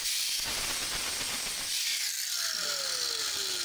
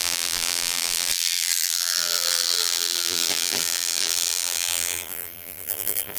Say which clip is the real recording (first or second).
first